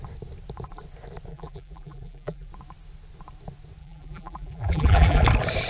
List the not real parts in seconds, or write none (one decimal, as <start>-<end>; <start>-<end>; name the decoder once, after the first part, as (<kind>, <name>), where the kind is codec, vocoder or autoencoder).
1.3-2.5 (vocoder, BigVGAN v2); 3.8-5.2